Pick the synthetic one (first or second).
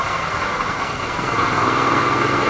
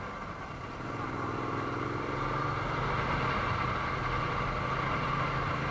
first